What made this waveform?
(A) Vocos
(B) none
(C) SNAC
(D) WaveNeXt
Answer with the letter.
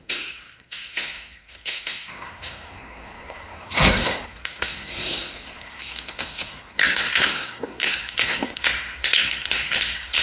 C